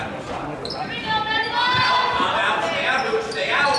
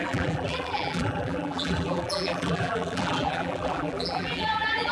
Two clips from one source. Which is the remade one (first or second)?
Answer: second